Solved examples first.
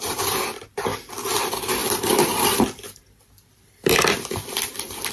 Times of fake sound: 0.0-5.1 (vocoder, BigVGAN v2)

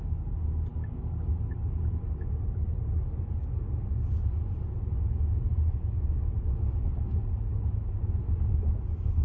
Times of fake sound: 0.7-1.3 (codec, DAC); 3.9-4.5

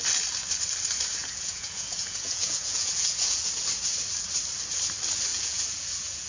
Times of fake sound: 1.2-3.5 (vocoder, Vocos); 5.3-6.3

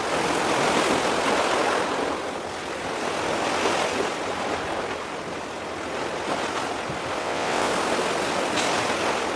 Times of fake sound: 7.2-7.7 (vocoder, WaveNeXt)

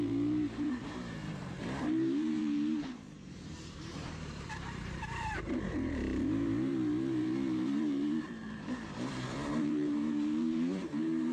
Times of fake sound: 0.0-11.3 (vocoder, BigVGAN v2)

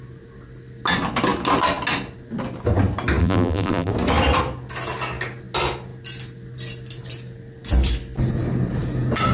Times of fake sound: 3.2-3.9 (vocoder, BigVGAN v2)

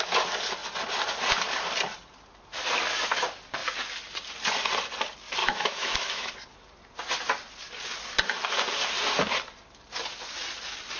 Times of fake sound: 5.4-6.3 (autoencoder, DAC-VAE)